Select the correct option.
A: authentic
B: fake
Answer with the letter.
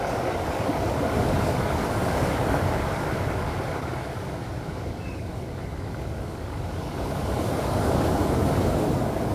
B